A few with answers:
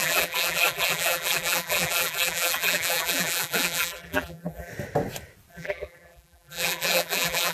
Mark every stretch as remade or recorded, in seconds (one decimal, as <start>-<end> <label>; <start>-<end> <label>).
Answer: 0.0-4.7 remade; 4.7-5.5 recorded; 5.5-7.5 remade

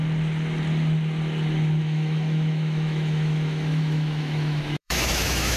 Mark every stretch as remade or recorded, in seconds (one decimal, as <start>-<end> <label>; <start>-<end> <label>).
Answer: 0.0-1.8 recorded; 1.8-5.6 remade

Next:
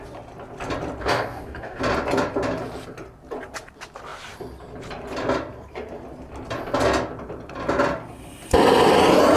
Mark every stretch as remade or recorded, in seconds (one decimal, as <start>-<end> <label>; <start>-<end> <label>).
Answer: 0.0-1.0 recorded; 1.0-1.8 remade; 1.8-9.4 recorded